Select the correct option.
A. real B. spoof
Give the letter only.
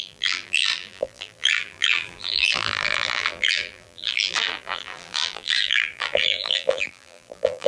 B